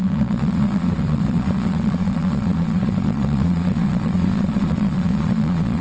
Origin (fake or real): fake